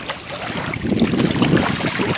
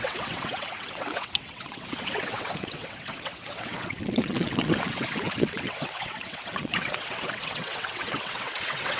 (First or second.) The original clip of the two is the first